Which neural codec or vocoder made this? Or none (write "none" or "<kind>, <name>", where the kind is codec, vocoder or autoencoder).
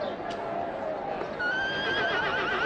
none